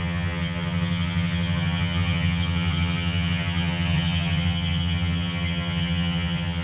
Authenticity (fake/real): fake